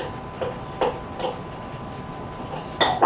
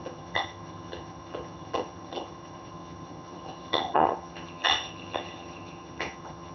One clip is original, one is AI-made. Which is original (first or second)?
first